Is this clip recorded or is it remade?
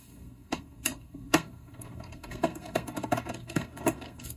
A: remade